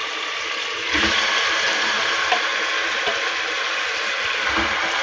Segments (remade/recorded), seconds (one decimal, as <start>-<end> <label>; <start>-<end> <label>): 0.0-1.1 recorded; 1.1-2.5 remade; 2.5-3.4 recorded; 3.4-5.0 remade